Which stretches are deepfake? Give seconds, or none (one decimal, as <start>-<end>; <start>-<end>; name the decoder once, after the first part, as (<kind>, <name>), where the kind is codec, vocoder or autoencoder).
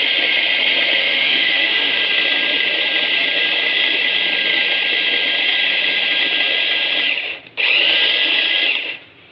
1.0-2.0 (autoencoder, DAC-VAE)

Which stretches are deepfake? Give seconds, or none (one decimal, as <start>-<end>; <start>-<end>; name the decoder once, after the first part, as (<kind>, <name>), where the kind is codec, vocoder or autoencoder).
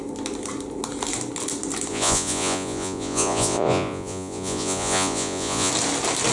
1.9-5.7 (vocoder, Vocos)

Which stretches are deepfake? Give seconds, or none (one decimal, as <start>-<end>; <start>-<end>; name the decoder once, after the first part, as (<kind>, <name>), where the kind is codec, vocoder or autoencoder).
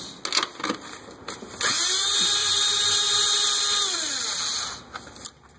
2.4-3.5 (vocoder, BigVGAN v2)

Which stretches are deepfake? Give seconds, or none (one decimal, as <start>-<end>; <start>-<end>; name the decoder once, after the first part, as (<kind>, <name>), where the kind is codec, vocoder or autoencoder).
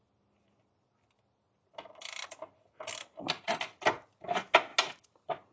none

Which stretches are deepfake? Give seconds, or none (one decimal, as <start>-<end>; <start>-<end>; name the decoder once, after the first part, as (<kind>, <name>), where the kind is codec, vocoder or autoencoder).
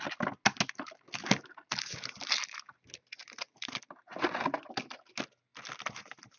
3.2-4.1 (vocoder, BigVGAN v2)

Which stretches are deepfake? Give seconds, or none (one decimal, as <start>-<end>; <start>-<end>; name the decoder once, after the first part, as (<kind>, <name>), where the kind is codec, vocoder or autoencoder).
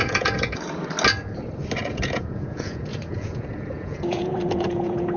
0.0-0.6 (vocoder, Vocos); 1.8-5.2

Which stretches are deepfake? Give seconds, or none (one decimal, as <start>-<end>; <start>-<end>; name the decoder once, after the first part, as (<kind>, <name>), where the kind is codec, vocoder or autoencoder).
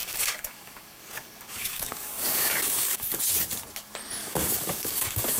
0.0-3.2 (codec, DAC); 4.2-5.4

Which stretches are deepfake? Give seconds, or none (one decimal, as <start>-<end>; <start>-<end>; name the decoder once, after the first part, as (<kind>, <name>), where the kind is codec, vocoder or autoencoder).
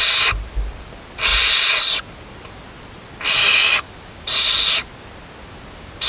1.3-2.0 (vocoder, BigVGAN v2); 3.5-4.7